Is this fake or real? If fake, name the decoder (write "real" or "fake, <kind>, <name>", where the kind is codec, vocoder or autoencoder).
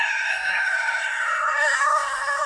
fake, codec, SNAC